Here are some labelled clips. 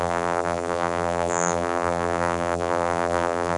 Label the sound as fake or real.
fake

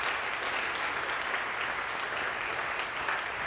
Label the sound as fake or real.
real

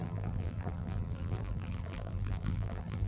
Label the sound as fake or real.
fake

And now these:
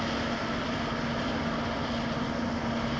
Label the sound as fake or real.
real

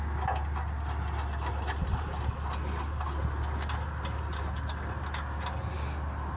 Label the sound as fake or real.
real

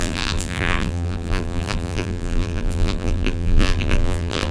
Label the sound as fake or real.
fake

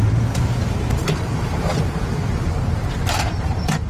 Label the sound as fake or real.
fake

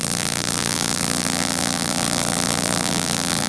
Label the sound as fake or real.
fake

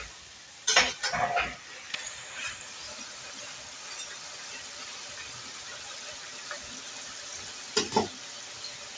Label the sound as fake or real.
real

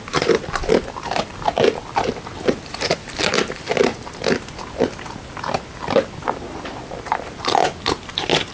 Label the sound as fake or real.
fake